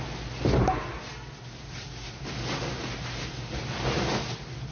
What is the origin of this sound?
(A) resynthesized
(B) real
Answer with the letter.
B